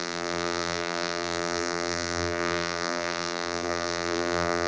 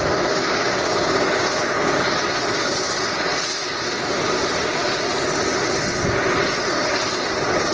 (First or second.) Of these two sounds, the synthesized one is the first